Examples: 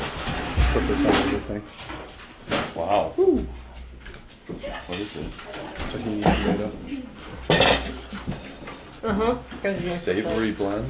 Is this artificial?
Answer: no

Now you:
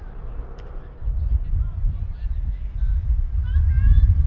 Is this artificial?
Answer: no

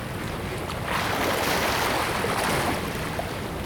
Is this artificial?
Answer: no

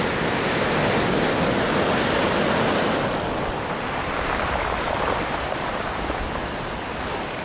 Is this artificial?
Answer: no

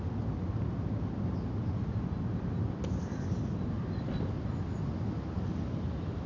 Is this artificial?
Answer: no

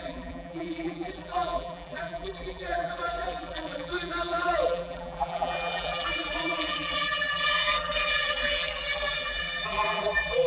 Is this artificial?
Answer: yes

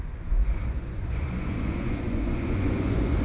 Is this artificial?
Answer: yes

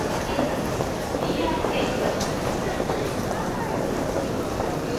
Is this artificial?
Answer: yes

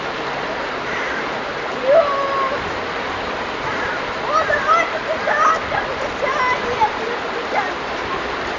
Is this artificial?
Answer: no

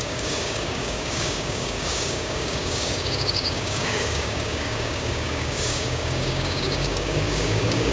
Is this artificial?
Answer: yes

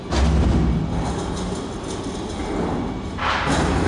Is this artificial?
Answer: no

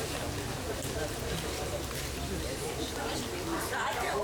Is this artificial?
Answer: no